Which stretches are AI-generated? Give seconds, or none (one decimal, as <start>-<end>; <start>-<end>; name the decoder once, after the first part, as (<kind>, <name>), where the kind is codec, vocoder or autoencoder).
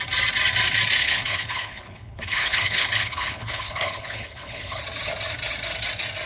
1.0-4.8 (codec, HILCodec)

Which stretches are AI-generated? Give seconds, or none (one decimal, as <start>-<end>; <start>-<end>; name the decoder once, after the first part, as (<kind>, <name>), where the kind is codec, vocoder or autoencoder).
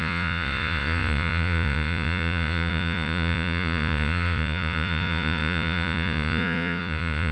0.0-7.3 (vocoder, Vocos)